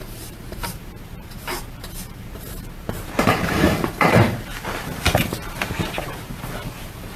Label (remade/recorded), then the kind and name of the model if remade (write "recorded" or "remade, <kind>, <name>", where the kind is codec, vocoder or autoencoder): remade, vocoder, BigVGAN v2